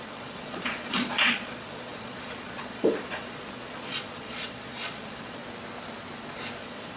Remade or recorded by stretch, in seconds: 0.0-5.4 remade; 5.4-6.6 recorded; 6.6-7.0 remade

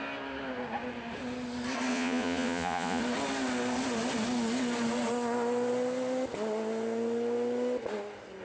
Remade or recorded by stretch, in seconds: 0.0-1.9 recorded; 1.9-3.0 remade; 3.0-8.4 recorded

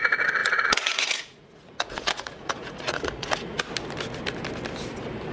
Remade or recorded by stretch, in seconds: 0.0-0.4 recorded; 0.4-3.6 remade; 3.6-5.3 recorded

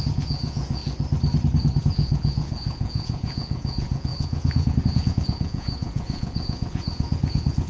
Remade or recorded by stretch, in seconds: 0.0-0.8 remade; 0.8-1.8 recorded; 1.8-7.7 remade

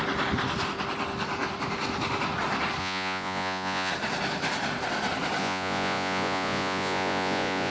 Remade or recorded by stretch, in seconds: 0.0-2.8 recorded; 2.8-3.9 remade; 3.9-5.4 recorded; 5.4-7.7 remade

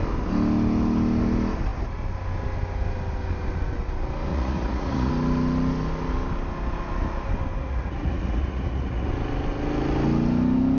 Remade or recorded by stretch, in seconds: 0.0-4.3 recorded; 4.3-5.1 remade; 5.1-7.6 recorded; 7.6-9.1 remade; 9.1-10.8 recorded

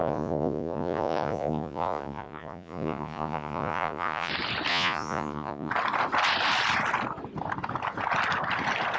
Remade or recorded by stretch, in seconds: 0.0-4.3 remade; 4.3-4.7 recorded; 4.7-5.7 remade; 5.7-9.0 recorded